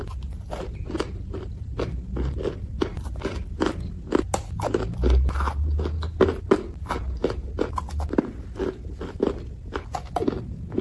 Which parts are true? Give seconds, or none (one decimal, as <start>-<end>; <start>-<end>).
0.0-10.8